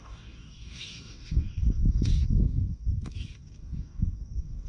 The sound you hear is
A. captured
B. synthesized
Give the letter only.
B